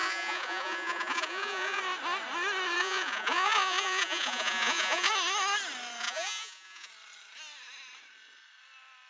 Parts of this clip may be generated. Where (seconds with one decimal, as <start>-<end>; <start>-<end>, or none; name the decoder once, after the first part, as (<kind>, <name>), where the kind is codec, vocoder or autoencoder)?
0.0-1.8 (vocoder, Vocos); 2.8-5.1; 6.0-6.9

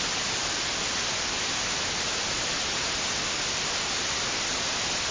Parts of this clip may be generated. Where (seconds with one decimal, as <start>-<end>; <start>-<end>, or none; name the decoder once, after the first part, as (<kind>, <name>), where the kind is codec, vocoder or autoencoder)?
none

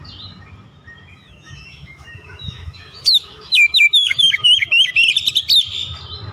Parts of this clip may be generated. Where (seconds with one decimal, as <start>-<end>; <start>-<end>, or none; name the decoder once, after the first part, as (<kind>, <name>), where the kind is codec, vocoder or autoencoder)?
1.1-4.9 (autoencoder, DAC-VAE)

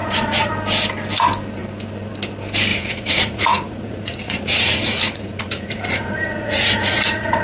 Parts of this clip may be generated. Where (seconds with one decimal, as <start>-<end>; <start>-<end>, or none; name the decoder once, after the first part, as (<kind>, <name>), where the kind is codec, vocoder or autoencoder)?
0.0-0.5 (vocoder, Vocos); 2.7-7.4

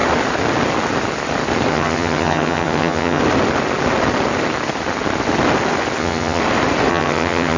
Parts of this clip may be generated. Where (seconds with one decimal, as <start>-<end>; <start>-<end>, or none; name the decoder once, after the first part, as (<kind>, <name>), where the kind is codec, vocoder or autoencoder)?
1.7-3.2 (vocoder, HiFi-GAN); 6.0-6.4; 6.9-7.6

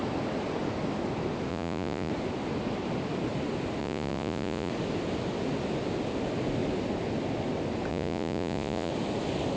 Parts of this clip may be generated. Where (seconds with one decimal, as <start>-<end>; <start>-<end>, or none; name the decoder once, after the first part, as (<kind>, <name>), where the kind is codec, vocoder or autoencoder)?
1.5-2.1 (vocoder, Vocos); 3.8-4.7; 7.9-8.9

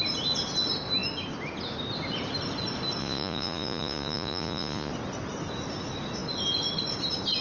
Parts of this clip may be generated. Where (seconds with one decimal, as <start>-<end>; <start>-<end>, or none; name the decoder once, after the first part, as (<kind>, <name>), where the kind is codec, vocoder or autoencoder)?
3.0-4.9 (vocoder, Vocos)